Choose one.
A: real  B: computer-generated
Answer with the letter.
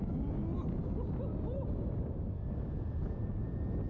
A